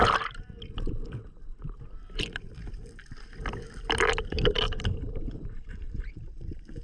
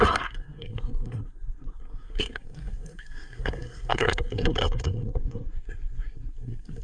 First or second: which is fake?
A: second